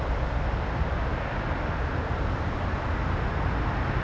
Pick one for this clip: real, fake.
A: real